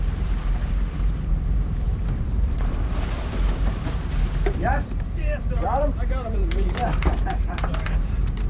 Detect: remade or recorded remade